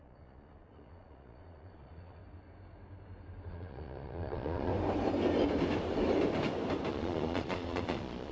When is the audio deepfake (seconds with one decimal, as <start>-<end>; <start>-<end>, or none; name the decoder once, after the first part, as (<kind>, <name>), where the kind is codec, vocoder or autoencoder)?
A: 0.0-2.2 (vocoder, Vocos); 3.5-4.7; 6.9-8.3

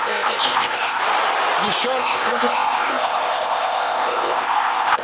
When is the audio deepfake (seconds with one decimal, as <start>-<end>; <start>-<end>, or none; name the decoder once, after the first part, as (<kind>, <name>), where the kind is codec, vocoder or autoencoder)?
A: 0.0-1.0 (codec, ZipCodec); 2.0-5.0

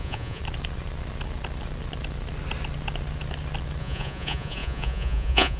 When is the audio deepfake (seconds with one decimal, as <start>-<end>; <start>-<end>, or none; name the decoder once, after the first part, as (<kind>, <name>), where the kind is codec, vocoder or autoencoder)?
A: 0.0-0.4 (vocoder, Vocos); 3.8-5.6

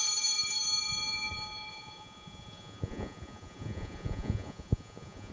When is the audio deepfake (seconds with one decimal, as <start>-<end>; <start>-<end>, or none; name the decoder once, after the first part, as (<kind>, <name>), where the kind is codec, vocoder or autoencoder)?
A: 1.7-5.3 (vocoder, Vocos)

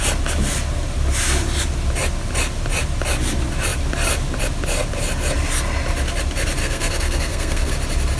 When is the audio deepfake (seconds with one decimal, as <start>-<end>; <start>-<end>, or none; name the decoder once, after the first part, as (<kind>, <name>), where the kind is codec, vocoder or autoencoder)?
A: 6.6-7.7 (codec, SNAC)

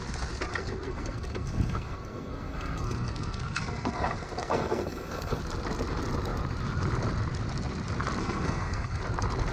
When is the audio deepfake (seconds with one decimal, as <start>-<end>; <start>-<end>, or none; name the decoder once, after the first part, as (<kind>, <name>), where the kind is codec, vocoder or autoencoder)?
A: 0.5-5.4 (codec, SNAC); 8.2-9.0

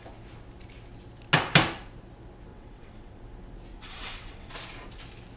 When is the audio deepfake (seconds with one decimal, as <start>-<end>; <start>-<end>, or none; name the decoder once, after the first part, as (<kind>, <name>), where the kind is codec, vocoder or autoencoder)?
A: 2.5-3.2 (vocoder, WaveNeXt); 3.7-4.5